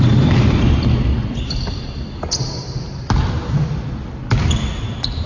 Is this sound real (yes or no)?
yes